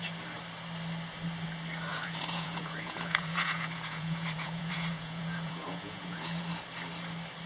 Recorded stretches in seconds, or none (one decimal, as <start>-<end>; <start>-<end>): 0.0-1.9; 6.4-7.5